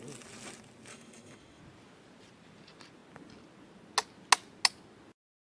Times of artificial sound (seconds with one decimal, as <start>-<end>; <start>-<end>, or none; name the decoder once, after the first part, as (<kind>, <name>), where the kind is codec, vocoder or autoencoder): 0.9-1.6 (autoencoder, DAC-VAE)